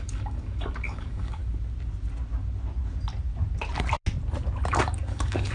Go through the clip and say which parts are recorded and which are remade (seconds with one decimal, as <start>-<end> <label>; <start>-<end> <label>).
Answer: 0.0-1.4 remade; 1.4-4.7 recorded; 4.7-5.5 remade